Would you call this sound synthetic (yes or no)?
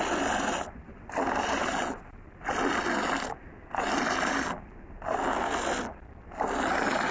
no